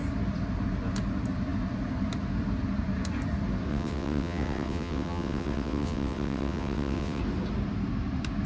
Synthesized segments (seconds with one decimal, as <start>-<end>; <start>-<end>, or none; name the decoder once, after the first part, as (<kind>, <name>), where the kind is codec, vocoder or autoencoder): 3.7-7.2 (vocoder, WaveNeXt)